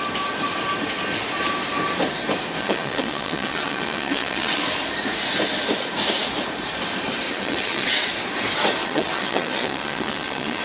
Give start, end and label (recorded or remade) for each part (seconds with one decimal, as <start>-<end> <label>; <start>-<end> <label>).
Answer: 0.0-2.6 recorded; 2.6-4.6 remade; 4.6-7.3 recorded; 7.3-8.1 remade; 8.1-8.8 recorded; 8.8-10.6 remade